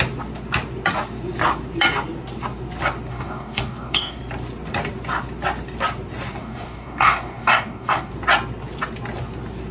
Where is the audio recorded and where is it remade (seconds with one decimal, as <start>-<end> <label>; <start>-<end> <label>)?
0.0-3.1 recorded; 3.1-4.2 remade; 4.2-6.4 recorded; 6.4-8.1 remade; 8.1-9.7 recorded